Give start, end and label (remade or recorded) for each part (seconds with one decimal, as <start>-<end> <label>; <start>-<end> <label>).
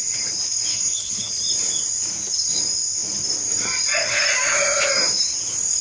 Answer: 0.0-0.7 recorded; 0.7-1.3 remade; 1.3-5.8 recorded